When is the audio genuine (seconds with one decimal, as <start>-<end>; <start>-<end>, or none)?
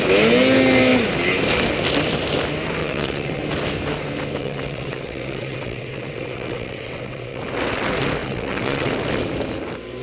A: 0.0-2.8; 3.4-4.4; 7.5-8.2; 8.9-10.0